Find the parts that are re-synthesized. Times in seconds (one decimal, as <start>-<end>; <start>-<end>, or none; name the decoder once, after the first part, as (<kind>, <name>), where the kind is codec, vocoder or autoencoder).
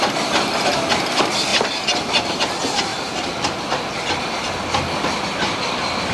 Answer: 2.9-3.5 (vocoder, BigVGAN v2)